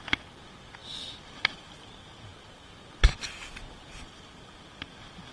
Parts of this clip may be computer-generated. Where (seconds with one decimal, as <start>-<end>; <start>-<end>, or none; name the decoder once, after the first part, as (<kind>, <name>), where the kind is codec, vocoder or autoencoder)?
none